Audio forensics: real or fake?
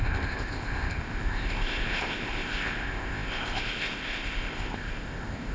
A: fake